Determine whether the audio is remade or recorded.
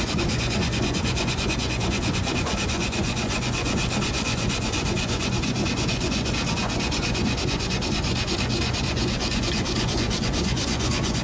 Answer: remade